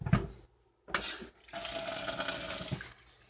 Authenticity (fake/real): real